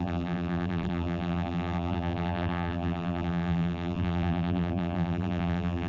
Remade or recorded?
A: remade